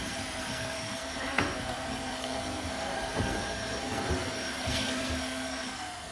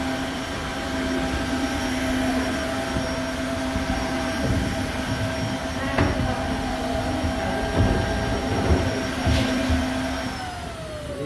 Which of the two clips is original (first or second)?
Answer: second